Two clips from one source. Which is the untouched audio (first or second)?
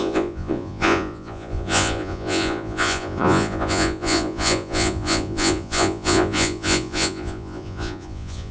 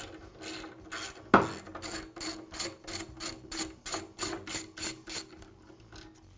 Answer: second